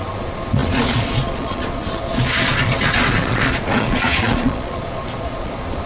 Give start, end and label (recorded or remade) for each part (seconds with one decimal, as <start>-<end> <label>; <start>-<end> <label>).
0.0-5.9 remade

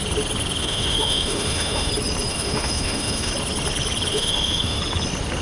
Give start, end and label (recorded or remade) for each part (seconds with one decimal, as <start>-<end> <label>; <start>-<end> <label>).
0.0-0.6 recorded; 0.6-1.9 remade; 1.9-2.3 recorded; 2.3-3.3 remade; 3.3-4.1 recorded; 4.1-4.8 remade; 4.8-5.4 recorded

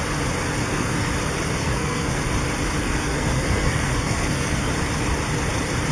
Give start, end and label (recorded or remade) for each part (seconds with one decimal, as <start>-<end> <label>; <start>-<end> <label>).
0.0-0.6 recorded; 0.6-1.1 remade; 1.1-1.6 recorded; 1.6-2.2 remade; 2.2-2.8 recorded; 2.8-4.7 remade; 4.7-5.9 recorded

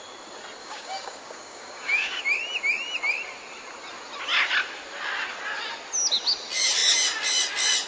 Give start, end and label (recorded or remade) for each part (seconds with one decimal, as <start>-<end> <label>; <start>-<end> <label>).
0.0-0.6 recorded; 0.6-2.2 remade; 2.2-7.9 recorded

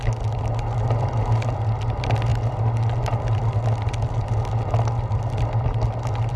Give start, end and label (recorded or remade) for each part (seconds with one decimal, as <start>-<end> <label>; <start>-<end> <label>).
0.0-6.4 recorded

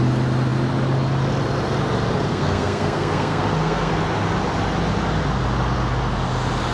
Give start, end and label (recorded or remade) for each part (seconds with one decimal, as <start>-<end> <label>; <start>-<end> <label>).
0.0-2.3 recorded; 2.3-3.9 remade; 3.9-6.7 recorded

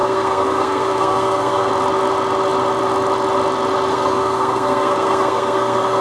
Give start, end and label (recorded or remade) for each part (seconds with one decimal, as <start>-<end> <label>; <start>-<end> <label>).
0.0-1.7 remade; 1.7-3.9 recorded; 3.9-6.0 remade

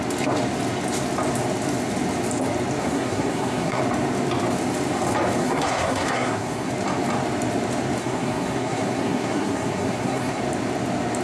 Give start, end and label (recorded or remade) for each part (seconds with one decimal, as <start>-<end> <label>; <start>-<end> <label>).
0.0-2.8 recorded; 2.8-3.8 remade; 3.8-5.4 recorded; 5.4-6.7 remade; 6.7-8.0 recorded; 8.0-10.4 remade; 10.4-11.2 recorded